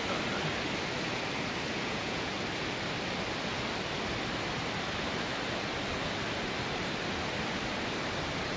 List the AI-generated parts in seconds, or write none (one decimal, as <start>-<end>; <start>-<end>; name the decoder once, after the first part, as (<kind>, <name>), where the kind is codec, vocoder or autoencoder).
1.7-2.3 (vocoder, Vocos)